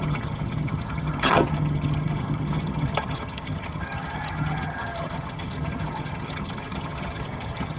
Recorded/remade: remade